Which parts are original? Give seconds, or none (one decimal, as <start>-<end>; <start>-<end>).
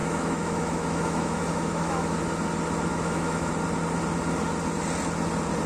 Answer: 2.2-2.9; 3.5-5.7